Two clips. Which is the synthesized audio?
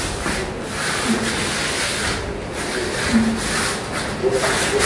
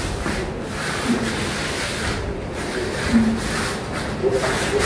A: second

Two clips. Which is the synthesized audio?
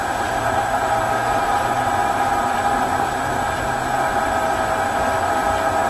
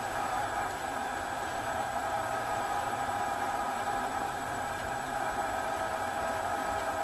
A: second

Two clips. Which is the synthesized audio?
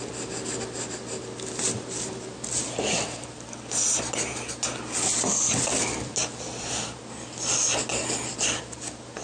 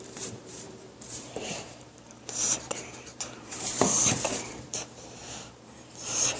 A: second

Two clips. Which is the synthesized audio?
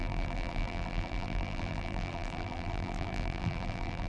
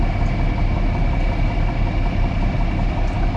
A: first